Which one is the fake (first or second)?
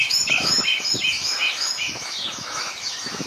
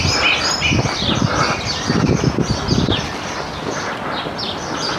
first